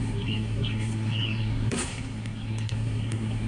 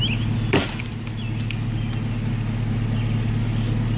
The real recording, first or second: second